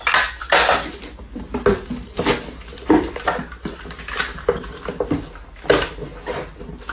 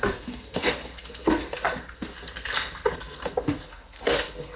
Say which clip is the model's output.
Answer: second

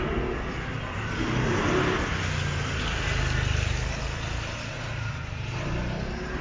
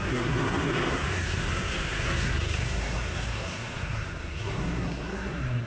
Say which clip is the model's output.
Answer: second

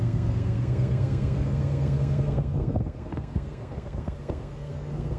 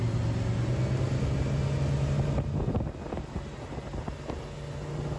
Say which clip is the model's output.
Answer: first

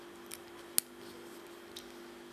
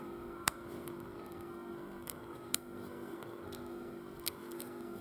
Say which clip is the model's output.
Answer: second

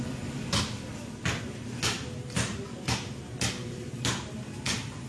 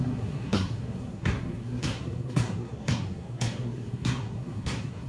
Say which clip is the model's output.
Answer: second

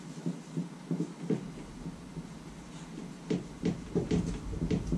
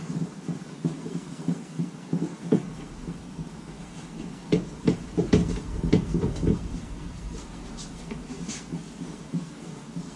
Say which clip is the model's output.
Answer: second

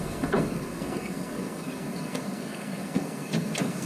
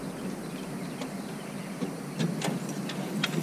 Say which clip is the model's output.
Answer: first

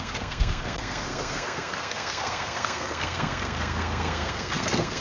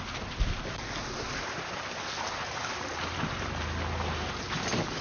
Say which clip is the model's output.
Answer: first